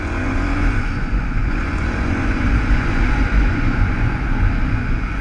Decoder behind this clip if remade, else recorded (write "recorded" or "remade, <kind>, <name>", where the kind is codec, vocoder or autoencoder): remade, vocoder, Vocos